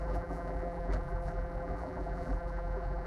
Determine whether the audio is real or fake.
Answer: fake